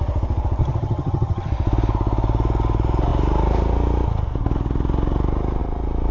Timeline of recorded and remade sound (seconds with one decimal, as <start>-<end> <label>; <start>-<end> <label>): 0.0-0.6 recorded; 0.6-1.5 remade; 1.5-6.1 recorded